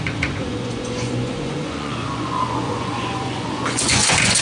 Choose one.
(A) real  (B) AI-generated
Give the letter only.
B